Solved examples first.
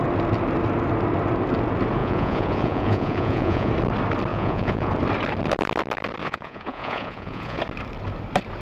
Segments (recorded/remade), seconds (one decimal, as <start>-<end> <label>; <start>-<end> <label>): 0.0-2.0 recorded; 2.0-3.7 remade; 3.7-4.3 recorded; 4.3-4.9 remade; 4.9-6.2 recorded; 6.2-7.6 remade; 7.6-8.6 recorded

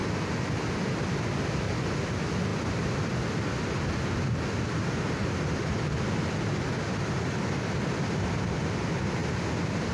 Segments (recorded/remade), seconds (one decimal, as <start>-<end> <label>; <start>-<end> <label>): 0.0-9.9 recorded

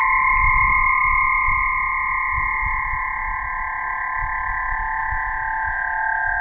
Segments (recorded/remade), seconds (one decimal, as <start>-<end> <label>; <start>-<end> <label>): 0.0-6.4 recorded

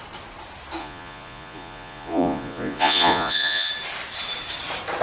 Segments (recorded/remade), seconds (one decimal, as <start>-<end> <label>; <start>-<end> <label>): 0.0-0.8 recorded; 0.8-3.7 remade; 3.7-5.0 recorded